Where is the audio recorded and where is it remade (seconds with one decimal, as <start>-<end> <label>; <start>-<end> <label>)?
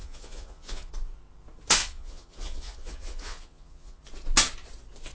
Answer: 0.0-0.9 remade; 0.9-1.8 recorded; 1.8-4.0 remade; 4.0-5.1 recorded